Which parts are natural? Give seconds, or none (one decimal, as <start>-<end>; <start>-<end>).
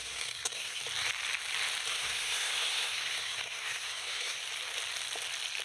0.8-1.9; 4.4-5.6